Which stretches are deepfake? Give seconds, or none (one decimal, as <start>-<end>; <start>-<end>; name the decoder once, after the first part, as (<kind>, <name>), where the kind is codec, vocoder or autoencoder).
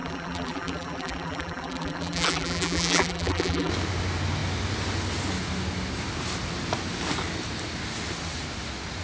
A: 0.0-3.7 (vocoder, BigVGAN v2)